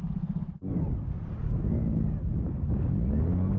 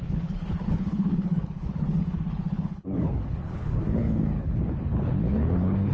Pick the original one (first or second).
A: first